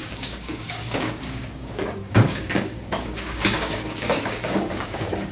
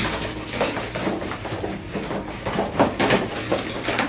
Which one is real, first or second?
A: second